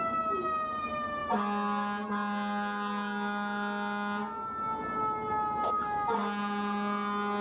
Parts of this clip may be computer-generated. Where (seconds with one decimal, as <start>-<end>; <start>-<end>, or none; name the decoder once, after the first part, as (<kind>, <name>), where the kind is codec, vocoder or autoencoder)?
none